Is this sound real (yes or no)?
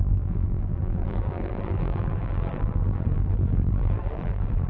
no